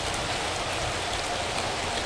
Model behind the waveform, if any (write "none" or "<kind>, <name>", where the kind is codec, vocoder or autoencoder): none